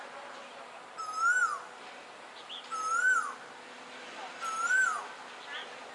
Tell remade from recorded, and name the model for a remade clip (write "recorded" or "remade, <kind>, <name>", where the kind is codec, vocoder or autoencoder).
recorded